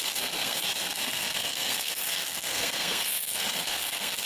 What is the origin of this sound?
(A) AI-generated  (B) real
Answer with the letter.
A